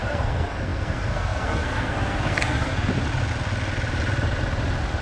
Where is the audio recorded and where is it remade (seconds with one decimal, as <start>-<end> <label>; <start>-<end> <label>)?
0.0-2.9 remade; 2.9-5.0 recorded